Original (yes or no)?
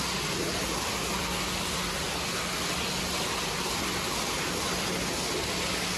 yes